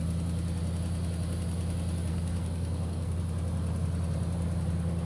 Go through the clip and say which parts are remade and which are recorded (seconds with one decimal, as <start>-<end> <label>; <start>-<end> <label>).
0.0-2.1 recorded; 2.1-3.2 remade; 3.2-5.1 recorded